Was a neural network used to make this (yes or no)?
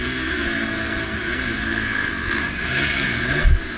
yes